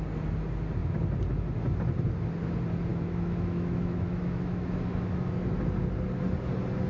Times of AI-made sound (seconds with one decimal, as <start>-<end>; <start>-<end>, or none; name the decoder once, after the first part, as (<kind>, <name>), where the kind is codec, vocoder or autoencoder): 2.9-5.3 (autoencoder, DAC-VAE)